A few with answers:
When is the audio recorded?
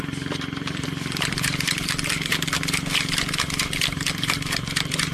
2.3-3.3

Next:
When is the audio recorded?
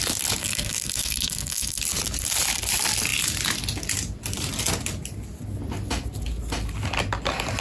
0.0-0.4; 1.8-7.6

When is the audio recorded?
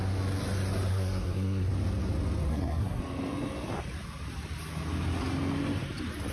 0.0-0.9; 1.7-2.5; 3.0-6.3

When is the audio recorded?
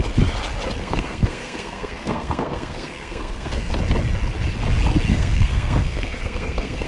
0.0-0.8; 3.7-5.1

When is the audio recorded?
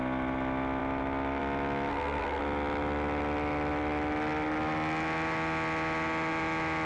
0.0-1.9; 2.4-6.9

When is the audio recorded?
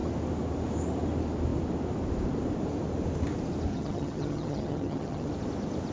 0.0-3.7; 5.3-5.9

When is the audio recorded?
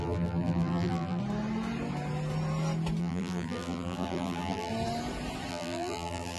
1.2-3.0; 4.7-5.5